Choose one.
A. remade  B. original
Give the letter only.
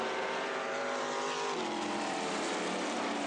A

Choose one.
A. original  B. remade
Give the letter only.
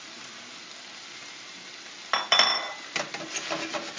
A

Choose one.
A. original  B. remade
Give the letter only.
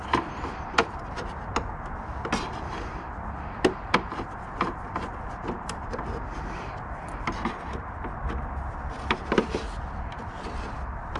A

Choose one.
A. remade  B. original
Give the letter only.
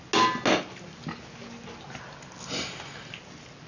B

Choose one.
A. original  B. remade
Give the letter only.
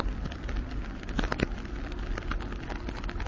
A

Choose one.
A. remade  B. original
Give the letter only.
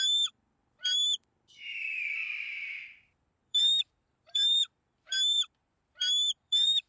A